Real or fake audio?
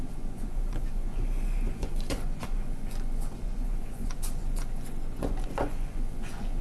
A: fake